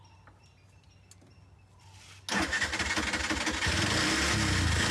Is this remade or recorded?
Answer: recorded